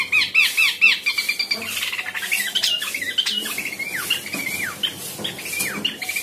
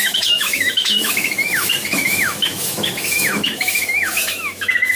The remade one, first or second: second